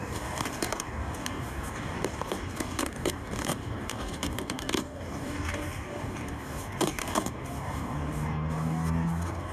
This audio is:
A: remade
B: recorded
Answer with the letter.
A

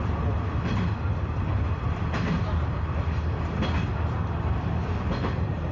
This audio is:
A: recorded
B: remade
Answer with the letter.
A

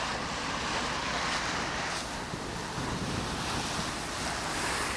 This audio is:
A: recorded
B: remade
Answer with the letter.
A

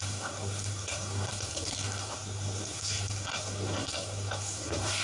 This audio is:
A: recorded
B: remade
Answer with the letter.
B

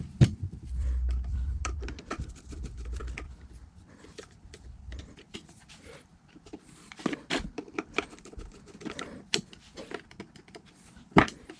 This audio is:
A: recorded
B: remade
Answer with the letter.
B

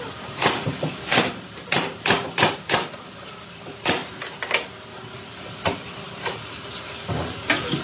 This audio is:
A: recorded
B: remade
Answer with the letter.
A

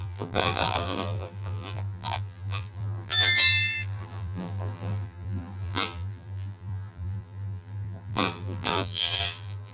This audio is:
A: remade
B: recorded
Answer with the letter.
A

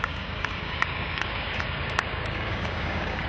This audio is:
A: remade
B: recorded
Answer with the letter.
A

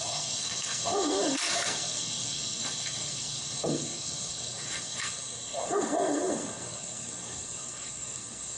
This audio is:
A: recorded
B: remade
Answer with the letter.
B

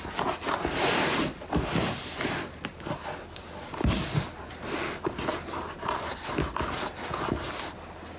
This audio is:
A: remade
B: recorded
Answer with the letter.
B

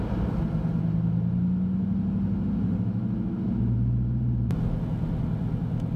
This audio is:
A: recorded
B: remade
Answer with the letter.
A